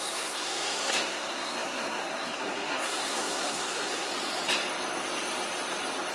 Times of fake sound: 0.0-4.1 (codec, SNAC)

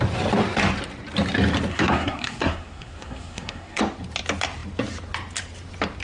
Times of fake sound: 1.7-3.8 (codec, SNAC)

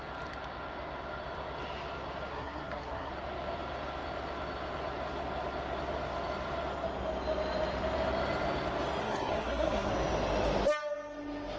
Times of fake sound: 2.3-3.1 (codec, SNAC); 9.0-9.9

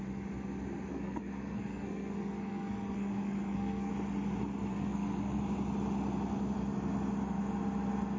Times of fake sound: 0.9-3.9 (codec, SNAC); 4.7-5.4

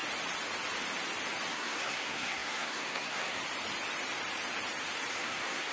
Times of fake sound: 1.5-3.4 (codec, SNAC); 5.1-5.7